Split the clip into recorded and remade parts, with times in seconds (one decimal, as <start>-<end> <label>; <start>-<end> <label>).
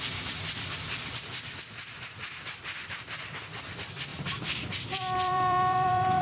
0.0-4.1 recorded; 4.1-6.2 remade